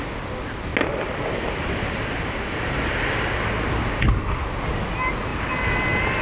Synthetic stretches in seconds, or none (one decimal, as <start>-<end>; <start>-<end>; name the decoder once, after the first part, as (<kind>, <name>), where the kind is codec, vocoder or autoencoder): none